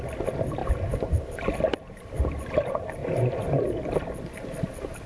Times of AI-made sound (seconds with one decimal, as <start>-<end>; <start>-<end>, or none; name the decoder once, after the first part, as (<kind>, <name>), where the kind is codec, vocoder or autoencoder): 3.0-4.2 (vocoder, BigVGAN v2)

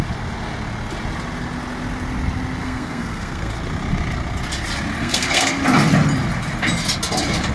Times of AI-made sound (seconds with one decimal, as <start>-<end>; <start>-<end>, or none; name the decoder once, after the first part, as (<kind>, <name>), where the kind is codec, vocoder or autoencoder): 2.6-3.5 (codec, SNAC); 5.0-5.6

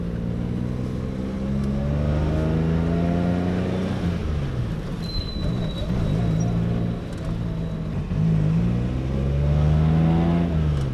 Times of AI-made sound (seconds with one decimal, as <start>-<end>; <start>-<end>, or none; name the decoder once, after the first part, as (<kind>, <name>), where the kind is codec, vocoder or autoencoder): none

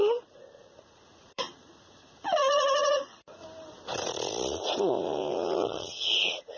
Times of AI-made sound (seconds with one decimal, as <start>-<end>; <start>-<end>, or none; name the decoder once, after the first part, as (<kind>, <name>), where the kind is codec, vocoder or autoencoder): 0.0-3.4 (vocoder, Vocos); 4.8-6.6

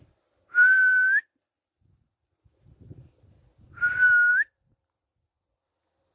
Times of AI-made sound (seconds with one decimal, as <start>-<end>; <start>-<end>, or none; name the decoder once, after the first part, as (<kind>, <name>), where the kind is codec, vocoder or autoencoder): none

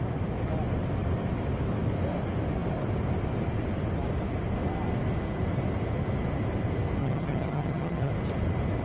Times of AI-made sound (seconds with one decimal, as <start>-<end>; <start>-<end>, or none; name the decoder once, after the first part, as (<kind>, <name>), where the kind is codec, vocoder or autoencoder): 7.0-8.1 (vocoder, HiFi-GAN)